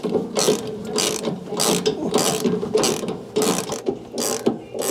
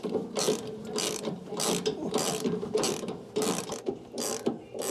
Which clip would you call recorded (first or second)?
first